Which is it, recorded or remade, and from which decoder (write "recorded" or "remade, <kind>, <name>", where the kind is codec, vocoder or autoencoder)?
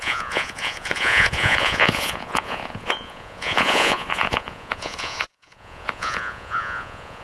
remade, vocoder, Vocos